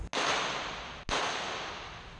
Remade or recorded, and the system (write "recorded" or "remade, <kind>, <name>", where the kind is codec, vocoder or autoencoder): recorded